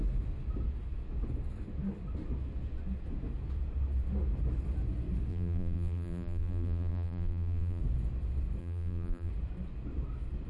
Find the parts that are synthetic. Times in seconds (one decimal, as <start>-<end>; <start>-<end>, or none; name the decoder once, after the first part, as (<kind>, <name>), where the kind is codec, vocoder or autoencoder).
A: 5.3-7.8 (vocoder, BigVGAN v2); 8.6-9.3